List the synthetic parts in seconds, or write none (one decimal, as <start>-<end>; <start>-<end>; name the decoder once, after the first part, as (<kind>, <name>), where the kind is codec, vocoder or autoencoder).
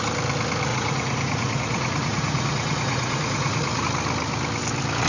0.7-3.8 (vocoder, Vocos)